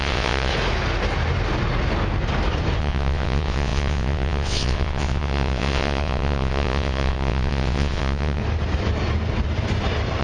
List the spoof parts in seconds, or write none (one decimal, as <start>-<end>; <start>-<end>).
0.0-0.5; 2.8-8.4